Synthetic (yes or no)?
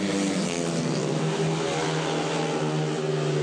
no